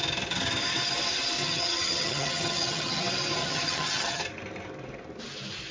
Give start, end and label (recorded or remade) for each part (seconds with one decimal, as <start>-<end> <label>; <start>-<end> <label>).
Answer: 0.0-1.4 recorded; 1.4-3.0 remade; 3.0-3.4 recorded; 3.4-4.2 remade; 4.2-5.7 recorded